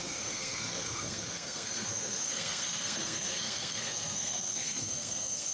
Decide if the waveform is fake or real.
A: fake